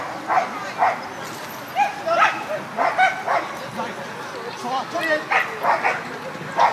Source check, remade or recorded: recorded